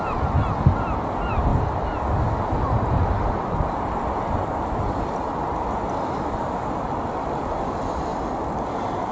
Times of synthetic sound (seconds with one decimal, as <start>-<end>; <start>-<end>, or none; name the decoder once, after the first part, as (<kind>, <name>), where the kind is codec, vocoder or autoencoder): none